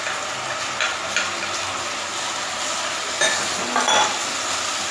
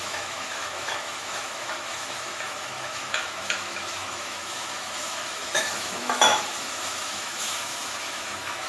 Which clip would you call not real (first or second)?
second